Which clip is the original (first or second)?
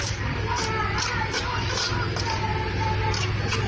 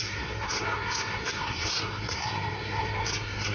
first